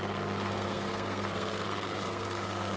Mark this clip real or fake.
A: fake